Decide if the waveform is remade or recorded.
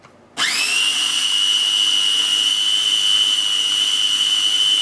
recorded